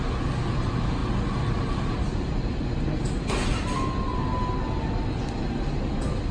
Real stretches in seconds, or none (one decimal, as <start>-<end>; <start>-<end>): 0.0-6.3